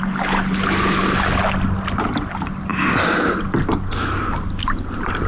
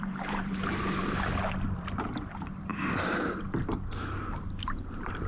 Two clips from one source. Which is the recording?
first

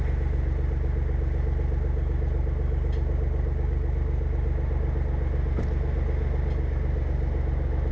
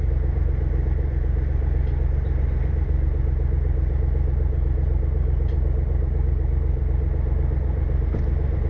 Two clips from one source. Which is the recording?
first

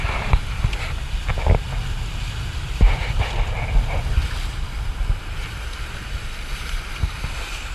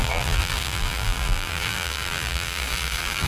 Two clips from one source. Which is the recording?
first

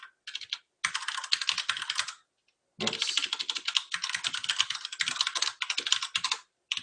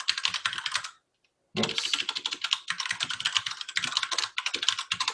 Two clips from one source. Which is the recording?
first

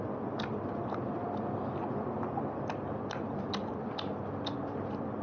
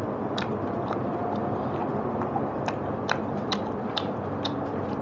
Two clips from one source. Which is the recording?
first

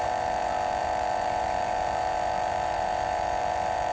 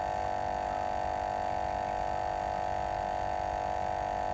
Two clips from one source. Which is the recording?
second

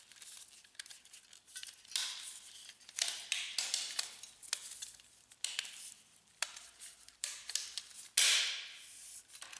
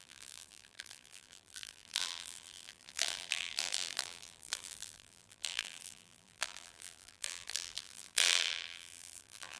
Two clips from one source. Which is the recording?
first